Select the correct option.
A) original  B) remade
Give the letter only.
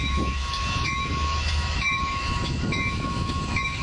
B